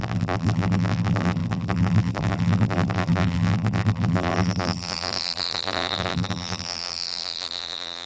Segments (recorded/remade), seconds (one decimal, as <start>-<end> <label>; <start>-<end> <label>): 0.0-8.1 remade